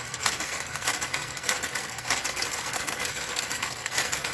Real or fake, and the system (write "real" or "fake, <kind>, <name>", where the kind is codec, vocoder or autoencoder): fake, codec, SNAC